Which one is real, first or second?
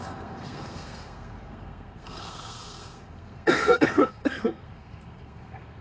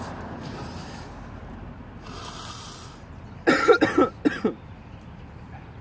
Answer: second